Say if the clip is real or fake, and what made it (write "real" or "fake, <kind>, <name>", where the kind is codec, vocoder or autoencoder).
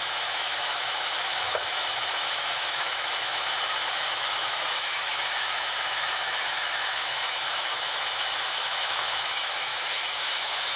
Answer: fake, autoencoder, DAC-VAE